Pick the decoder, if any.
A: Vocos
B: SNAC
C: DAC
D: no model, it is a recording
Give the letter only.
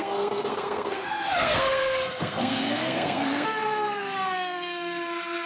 B